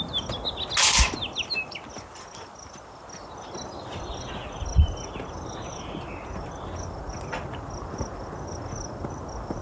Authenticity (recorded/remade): recorded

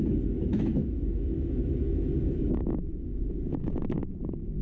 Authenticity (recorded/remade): remade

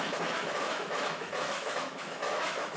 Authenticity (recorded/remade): remade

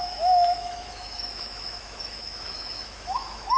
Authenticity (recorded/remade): remade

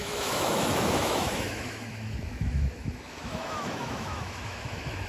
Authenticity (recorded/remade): remade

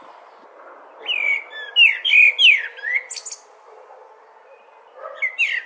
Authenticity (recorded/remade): recorded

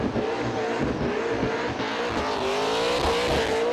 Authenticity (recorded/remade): recorded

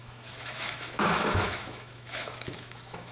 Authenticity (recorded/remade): remade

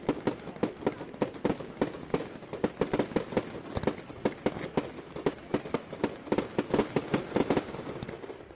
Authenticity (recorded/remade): recorded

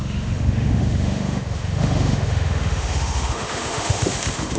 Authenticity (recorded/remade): remade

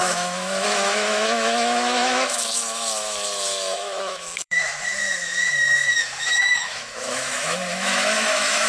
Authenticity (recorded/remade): remade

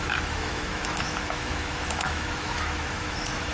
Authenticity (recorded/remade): remade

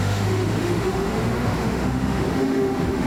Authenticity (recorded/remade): remade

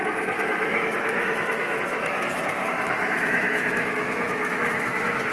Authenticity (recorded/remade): remade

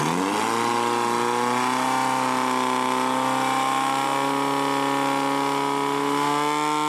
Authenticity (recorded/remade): recorded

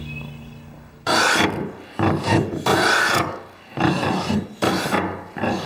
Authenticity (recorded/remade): recorded